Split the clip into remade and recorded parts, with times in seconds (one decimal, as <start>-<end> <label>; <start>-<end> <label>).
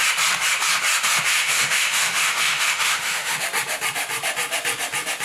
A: 0.0-1.3 recorded; 1.3-3.4 remade; 3.4-5.2 recorded